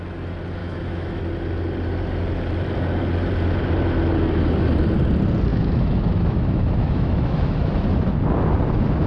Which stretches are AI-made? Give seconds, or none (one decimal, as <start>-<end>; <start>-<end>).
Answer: 0.6-1.2; 5.5-7.7